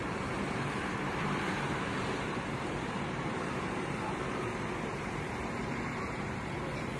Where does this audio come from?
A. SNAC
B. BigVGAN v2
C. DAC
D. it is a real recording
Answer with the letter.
B